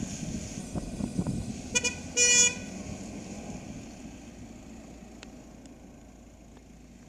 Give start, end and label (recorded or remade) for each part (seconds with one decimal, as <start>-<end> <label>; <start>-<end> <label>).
0.0-0.6 recorded; 0.6-1.5 remade; 1.5-7.1 recorded